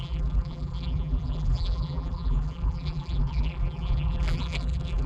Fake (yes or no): yes